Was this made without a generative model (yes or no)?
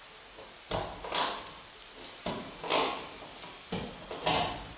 yes